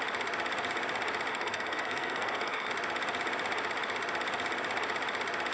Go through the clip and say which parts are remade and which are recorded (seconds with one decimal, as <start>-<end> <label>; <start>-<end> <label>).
0.0-1.3 recorded; 1.3-2.7 remade; 2.7-5.5 recorded